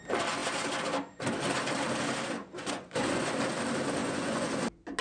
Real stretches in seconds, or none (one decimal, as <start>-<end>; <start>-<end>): 0.0-2.4; 3.3-4.0; 4.5-5.0